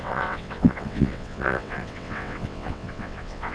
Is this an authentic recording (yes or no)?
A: no